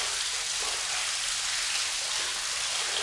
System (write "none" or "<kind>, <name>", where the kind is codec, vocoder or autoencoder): none